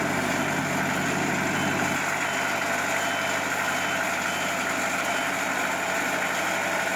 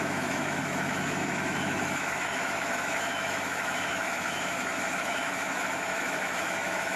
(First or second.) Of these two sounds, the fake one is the second